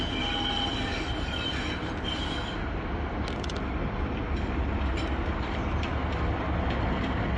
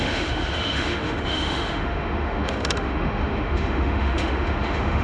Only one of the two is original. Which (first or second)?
first